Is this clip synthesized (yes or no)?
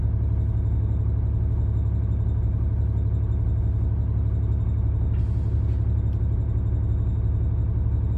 no